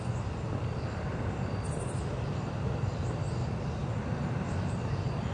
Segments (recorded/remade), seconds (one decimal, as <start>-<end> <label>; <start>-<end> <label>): 0.0-5.3 recorded